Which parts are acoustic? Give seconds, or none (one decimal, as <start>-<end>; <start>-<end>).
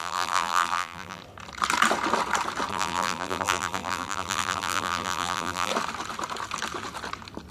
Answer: 1.2-2.7; 5.7-7.5